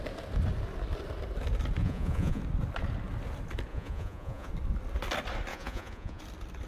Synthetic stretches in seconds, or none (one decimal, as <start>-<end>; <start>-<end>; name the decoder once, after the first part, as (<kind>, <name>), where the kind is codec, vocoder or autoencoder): 1.8-2.4 (vocoder, Vocos); 3.7-4.5; 5.5-6.2